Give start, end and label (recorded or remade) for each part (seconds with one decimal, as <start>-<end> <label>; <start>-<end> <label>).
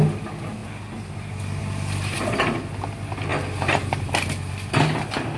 0.0-1.6 recorded; 1.6-2.6 remade; 2.6-5.4 recorded